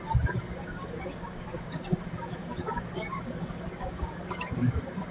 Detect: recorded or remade remade